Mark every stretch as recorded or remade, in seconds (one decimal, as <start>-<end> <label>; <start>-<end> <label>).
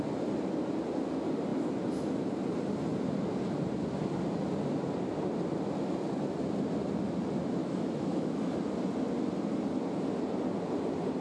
0.0-7.6 recorded; 7.6-8.5 remade; 8.5-11.2 recorded